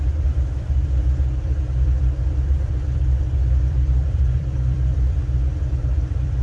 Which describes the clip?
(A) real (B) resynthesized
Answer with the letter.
B